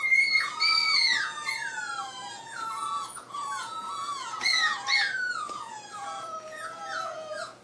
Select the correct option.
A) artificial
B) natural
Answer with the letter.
A